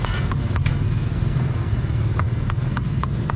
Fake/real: fake